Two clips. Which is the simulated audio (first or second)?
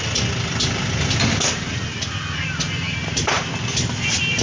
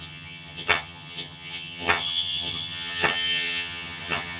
second